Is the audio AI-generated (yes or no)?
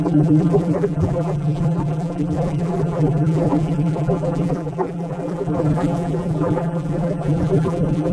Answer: yes